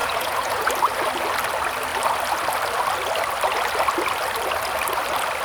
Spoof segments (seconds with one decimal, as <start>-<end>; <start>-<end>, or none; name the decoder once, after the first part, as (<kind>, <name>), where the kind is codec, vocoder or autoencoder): 0.0-0.7 (vocoder, Vocos)